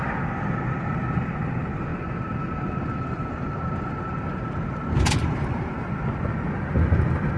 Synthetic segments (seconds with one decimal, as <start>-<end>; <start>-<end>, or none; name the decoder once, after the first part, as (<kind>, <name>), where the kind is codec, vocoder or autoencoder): none